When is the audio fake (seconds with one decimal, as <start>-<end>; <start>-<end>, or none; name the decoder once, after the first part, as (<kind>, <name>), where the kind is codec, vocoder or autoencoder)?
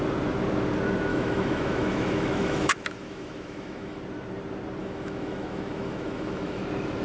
1.1-4.0 (autoencoder, DAC-VAE); 4.8-6.6